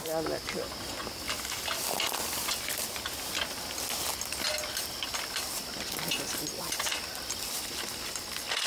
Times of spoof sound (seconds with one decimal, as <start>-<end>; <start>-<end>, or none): none